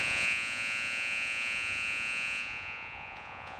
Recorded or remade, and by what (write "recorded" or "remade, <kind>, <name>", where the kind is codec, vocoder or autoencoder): remade, vocoder, Vocos